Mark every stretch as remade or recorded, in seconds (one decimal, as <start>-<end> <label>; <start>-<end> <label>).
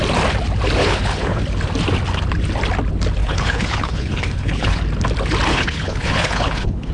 0.0-0.8 recorded; 0.8-1.4 remade; 1.4-3.2 recorded; 3.2-4.8 remade; 4.8-5.5 recorded; 5.5-6.9 remade